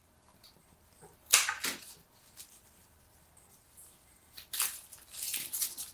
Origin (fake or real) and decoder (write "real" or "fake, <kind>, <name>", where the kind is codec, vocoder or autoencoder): fake, vocoder, BigVGAN v2